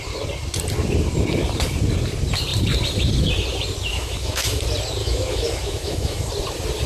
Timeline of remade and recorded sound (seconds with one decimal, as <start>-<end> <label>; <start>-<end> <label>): 0.0-3.9 recorded; 3.9-4.6 remade; 4.6-5.0 recorded; 5.0-6.3 remade; 6.3-6.9 recorded